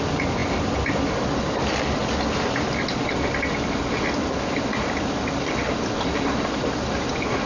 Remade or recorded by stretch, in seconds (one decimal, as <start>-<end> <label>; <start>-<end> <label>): 0.0-2.0 remade; 2.0-4.1 recorded; 4.1-7.5 remade